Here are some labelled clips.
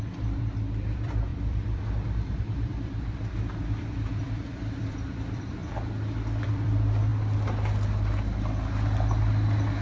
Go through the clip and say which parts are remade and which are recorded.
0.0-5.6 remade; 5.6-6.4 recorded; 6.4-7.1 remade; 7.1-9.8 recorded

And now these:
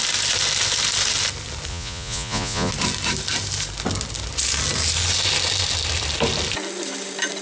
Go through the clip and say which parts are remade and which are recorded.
0.0-1.7 recorded; 1.7-2.7 remade; 2.7-7.4 recorded